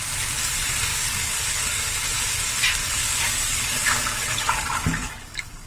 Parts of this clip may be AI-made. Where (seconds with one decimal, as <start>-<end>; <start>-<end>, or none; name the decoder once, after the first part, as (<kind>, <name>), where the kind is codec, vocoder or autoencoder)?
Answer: 0.9-1.9 (codec, DAC); 2.8-5.7